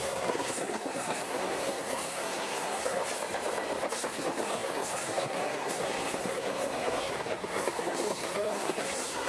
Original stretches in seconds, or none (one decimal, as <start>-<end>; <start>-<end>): 3.0-3.9